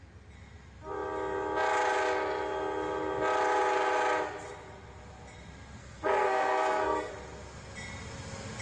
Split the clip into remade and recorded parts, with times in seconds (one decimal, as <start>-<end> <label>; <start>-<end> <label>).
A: 0.0-5.8 recorded; 5.8-7.1 remade; 7.1-8.6 recorded